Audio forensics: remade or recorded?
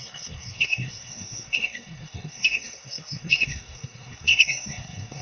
remade